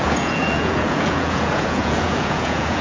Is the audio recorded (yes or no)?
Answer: no